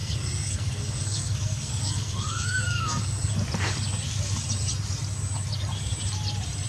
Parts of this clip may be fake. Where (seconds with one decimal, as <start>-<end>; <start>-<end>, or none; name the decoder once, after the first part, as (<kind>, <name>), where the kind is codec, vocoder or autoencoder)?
0.0-3.3 (codec, SNAC)